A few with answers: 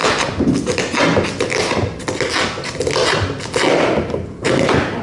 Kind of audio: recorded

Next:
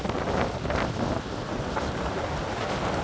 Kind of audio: recorded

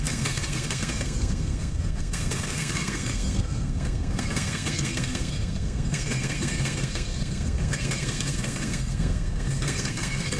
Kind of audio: remade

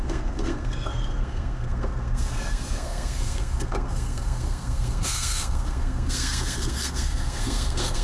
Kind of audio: remade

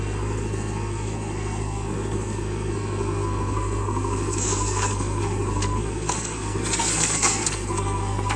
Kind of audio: remade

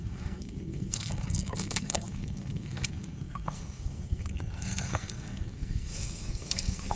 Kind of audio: remade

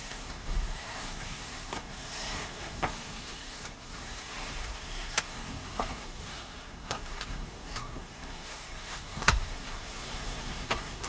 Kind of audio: remade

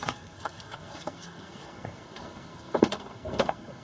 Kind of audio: remade